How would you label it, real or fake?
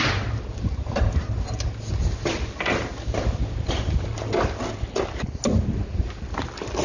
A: real